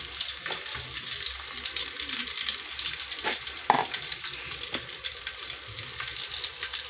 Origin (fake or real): real